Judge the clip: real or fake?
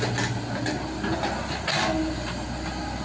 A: real